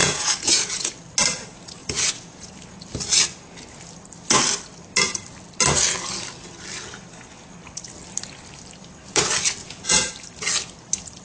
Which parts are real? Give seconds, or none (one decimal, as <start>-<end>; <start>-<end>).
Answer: 0.9-1.8; 2.5-9.6; 10.1-11.2